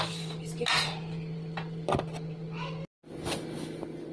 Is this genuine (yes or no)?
yes